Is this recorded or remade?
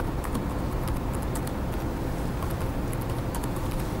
recorded